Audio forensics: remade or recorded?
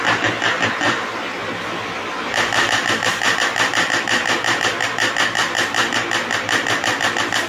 recorded